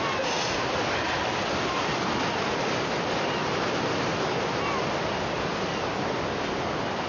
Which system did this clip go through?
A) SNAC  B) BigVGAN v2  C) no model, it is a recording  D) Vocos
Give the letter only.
C